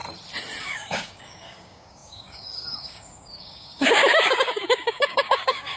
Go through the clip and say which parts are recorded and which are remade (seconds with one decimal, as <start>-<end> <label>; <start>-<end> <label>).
0.0-0.6 recorded; 0.6-5.8 remade